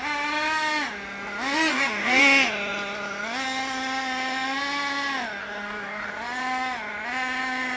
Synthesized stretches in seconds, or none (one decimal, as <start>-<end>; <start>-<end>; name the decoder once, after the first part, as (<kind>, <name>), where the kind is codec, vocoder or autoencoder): 1.7-2.2 (codec, DAC); 5.4-6.1